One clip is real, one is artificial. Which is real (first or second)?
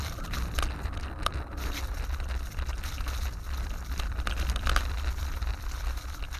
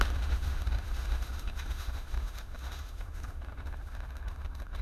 first